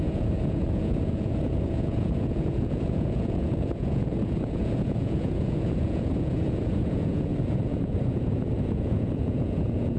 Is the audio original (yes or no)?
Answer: no